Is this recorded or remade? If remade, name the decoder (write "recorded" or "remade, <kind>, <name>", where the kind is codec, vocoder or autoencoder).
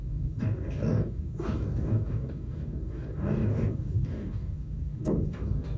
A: remade, codec, DAC